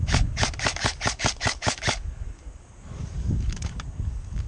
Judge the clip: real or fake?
fake